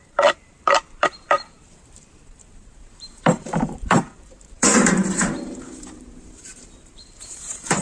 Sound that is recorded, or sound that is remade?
remade